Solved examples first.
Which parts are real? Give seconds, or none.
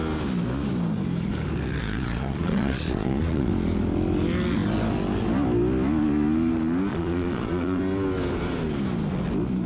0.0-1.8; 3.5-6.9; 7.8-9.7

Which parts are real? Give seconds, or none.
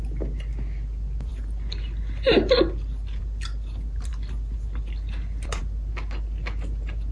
0.0-7.1